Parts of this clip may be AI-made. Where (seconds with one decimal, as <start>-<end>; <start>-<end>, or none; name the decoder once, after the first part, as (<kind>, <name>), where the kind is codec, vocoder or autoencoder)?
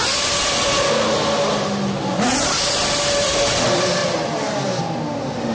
4.0-4.8 (vocoder, BigVGAN v2)